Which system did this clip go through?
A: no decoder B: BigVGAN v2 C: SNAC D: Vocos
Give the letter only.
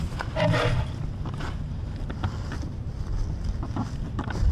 A